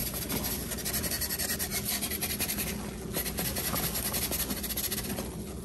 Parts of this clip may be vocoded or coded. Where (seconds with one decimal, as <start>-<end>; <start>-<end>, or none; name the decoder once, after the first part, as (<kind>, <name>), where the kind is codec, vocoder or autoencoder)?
none